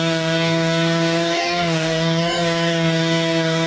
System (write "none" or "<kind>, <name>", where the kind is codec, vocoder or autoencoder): codec, DAC